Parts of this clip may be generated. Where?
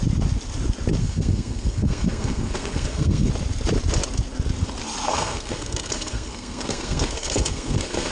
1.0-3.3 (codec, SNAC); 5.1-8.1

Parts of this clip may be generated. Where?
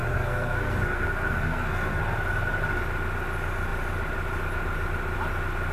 0.0-2.0 (codec, SNAC)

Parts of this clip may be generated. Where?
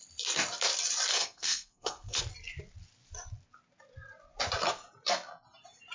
1.1-2.2 (codec, SNAC)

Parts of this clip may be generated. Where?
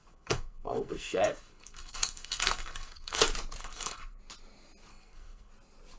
0.0-3.2 (codec, SNAC); 3.6-4.2; 4.9-5.5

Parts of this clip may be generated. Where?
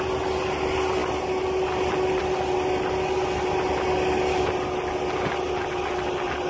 none